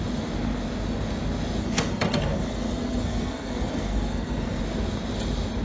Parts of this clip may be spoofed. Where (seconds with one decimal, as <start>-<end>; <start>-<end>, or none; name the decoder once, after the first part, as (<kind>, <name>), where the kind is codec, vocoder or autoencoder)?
1.6-4.6 (codec, SNAC)